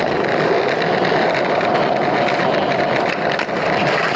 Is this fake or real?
real